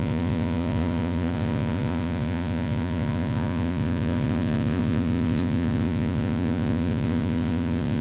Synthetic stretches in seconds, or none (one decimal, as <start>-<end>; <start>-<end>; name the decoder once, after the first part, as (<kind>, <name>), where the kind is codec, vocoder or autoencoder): 0.0-8.0 (vocoder, Vocos)